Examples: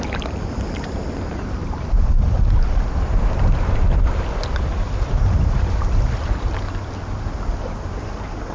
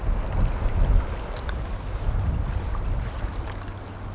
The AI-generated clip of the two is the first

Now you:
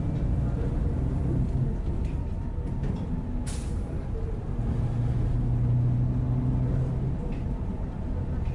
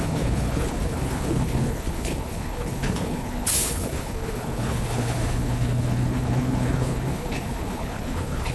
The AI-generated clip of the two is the second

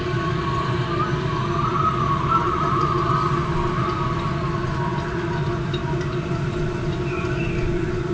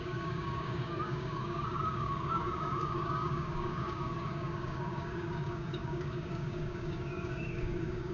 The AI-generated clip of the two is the second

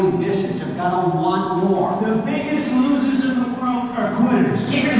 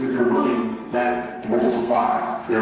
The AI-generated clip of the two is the second